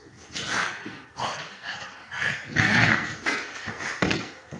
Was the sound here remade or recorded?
remade